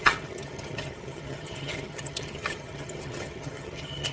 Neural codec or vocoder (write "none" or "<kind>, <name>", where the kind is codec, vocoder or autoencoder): vocoder, HiFi-GAN